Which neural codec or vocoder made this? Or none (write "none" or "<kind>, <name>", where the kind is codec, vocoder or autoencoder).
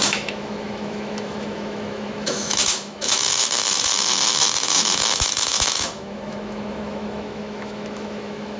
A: autoencoder, DAC-VAE